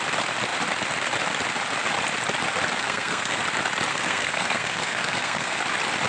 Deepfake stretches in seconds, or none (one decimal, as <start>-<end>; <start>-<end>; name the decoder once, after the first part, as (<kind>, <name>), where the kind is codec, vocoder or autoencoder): 2.8-3.4 (codec, SNAC); 3.9-5.6